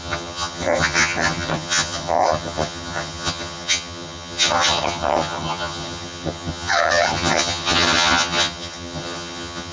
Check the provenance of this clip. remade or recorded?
remade